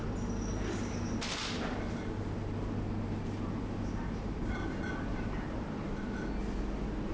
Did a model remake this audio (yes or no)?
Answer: no